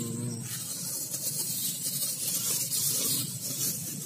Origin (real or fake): real